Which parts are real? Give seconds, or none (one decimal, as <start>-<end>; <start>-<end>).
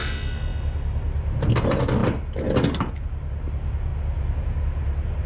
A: 0.0-5.3